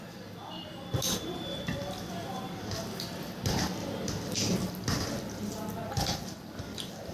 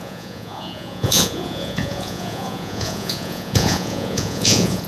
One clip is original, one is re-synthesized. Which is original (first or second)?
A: first